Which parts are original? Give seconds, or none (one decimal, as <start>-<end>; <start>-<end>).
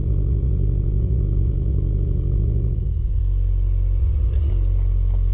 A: 3.2-4.0; 4.5-5.3